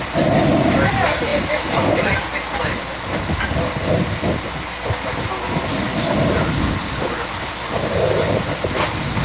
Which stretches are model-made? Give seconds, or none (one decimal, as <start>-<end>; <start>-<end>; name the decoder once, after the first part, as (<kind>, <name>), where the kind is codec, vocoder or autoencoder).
none